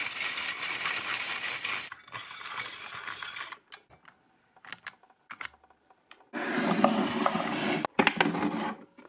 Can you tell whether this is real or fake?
real